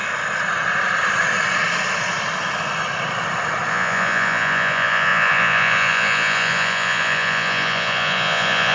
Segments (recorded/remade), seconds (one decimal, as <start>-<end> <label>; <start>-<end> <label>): 0.0-3.7 recorded; 3.7-8.7 remade